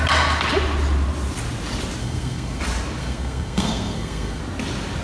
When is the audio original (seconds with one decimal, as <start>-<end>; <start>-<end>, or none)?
0.0-2.0; 2.6-3.0; 4.4-5.0